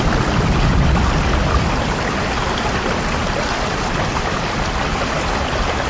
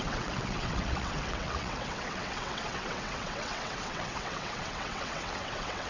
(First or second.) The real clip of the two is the first